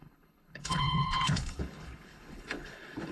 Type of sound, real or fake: fake